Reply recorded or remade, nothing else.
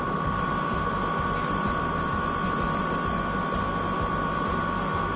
remade